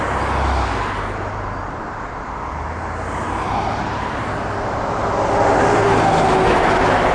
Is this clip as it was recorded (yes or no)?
yes